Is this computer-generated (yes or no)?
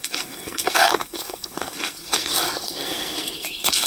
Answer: yes